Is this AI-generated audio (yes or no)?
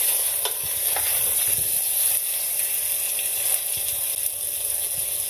no